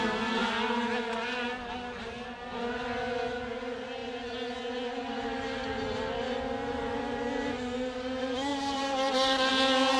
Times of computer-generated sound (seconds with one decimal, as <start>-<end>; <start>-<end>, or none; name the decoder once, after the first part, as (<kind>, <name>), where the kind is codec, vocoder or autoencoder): 8.5-9.5 (vocoder, BigVGAN v2)

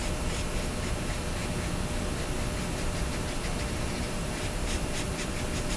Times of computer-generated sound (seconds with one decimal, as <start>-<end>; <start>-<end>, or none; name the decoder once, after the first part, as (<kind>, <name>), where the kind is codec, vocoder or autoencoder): 0.0-1.4 (vocoder, BigVGAN v2); 2.7-5.8

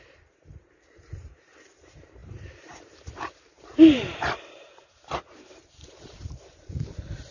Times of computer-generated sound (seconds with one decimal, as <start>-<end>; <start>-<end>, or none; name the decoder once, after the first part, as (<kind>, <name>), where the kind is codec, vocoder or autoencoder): 0.0-7.3 (vocoder, BigVGAN v2)

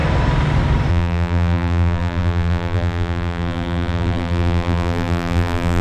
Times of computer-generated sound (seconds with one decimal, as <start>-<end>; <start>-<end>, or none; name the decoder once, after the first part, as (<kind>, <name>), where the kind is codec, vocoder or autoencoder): 0.9-5.8 (vocoder, BigVGAN v2)

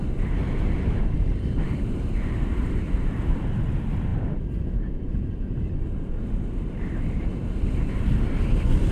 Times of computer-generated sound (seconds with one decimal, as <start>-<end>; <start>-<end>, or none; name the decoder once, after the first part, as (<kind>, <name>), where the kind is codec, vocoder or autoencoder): 0.4-2.4 (vocoder, BigVGAN v2)

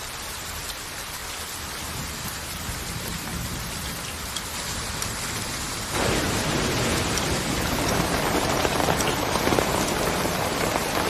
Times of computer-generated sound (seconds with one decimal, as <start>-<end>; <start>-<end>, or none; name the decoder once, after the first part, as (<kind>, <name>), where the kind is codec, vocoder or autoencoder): 0.0-1.2 (vocoder, BigVGAN v2); 2.3-3.3; 6.4-11.1